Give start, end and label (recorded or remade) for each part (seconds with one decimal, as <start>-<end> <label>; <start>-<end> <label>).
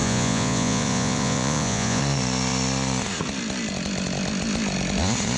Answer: 0.0-2.0 remade; 2.0-5.4 recorded